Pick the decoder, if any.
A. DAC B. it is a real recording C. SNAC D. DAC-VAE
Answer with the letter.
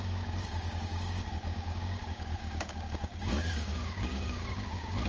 A